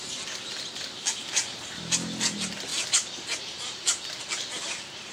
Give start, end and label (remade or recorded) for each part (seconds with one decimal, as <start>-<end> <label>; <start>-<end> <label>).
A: 0.0-5.1 recorded